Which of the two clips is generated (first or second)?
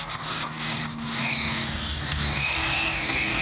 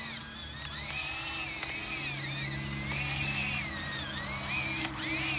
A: first